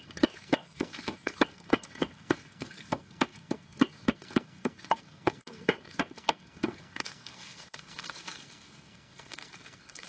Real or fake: fake